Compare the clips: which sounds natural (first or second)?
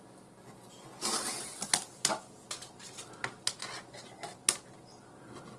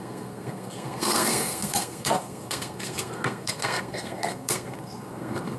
first